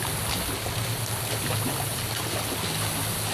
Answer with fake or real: real